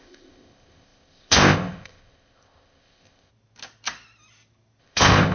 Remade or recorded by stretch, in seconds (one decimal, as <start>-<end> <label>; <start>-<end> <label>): 0.0-3.3 remade; 3.3-4.8 recorded; 4.8-5.3 remade

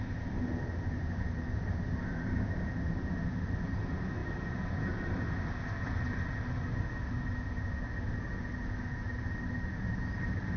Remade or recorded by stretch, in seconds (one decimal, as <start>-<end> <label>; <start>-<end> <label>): 0.0-10.6 recorded